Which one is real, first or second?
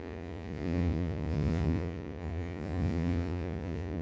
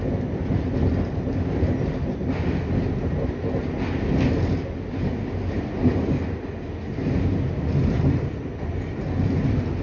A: second